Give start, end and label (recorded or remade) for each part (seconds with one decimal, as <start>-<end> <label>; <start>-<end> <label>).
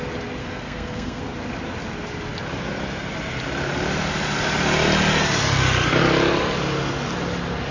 0.0-0.4 recorded; 0.4-1.2 remade; 1.2-7.7 recorded